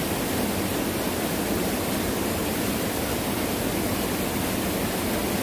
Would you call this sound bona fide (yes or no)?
yes